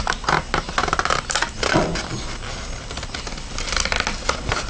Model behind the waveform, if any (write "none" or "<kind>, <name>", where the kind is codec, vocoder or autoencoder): none